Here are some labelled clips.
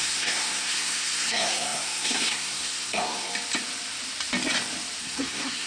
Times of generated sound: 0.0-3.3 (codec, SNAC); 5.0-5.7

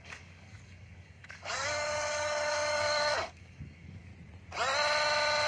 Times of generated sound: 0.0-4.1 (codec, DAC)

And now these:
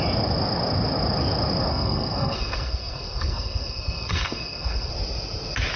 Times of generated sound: 1.7-4.9 (codec, SNAC)